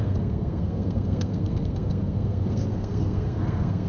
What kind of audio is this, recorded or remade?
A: remade